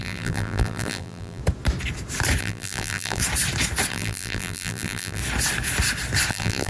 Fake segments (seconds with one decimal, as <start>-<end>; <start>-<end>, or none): 0.0-1.4; 2.4-3.2; 3.9-5.2; 6.3-6.7